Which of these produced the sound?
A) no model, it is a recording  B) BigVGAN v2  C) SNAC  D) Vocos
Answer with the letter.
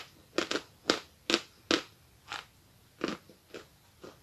A